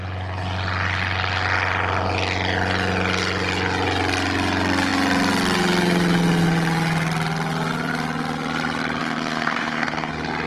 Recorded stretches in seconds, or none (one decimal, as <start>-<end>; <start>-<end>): 0.0-9.0; 10.1-10.5